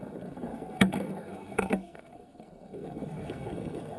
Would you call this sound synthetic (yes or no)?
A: yes